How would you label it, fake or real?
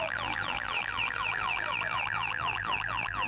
fake